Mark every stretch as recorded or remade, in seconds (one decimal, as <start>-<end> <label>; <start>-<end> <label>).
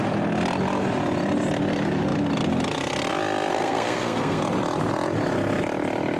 0.0-3.5 recorded; 3.5-4.4 remade; 4.4-6.2 recorded